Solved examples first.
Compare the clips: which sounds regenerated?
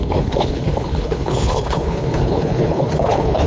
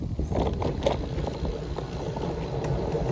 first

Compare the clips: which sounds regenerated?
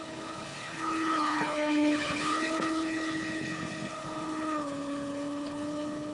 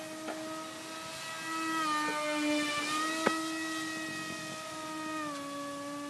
first